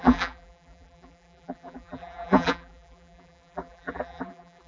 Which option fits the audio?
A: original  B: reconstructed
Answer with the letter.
B